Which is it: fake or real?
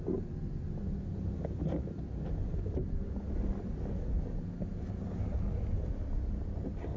real